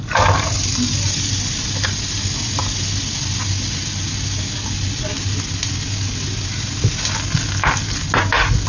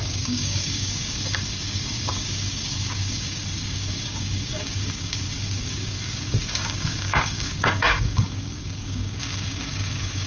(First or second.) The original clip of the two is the first